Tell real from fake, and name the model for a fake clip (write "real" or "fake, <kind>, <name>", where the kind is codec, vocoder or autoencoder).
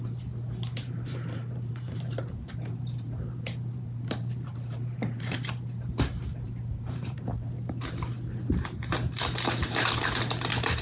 fake, vocoder, BigVGAN v2